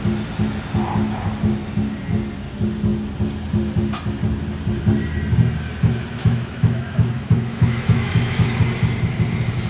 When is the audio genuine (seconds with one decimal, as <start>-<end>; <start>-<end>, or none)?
0.0-6.2; 8.6-9.7